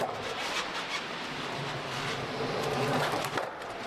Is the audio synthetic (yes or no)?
no